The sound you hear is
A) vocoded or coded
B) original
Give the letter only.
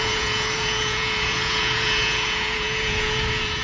A